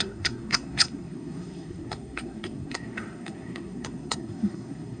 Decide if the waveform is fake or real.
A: fake